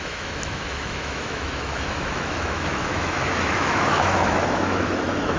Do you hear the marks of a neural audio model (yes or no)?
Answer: yes